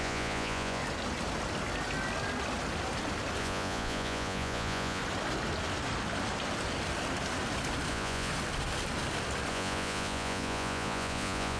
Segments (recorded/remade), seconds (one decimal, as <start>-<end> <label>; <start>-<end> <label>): 0.0-0.8 remade; 0.8-3.4 recorded; 3.4-5.0 remade; 5.0-7.9 recorded; 7.9-8.3 remade; 8.3-9.5 recorded; 9.5-11.6 remade